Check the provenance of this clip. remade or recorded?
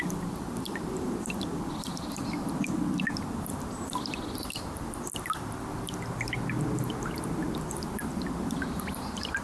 recorded